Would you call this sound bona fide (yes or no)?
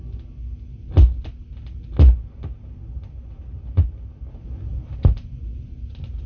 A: yes